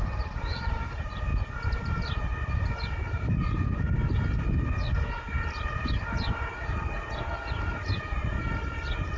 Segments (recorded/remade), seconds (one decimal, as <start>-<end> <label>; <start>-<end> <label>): 0.0-1.3 remade; 1.3-1.8 recorded; 1.8-2.3 remade; 2.3-5.8 recorded; 5.8-9.2 remade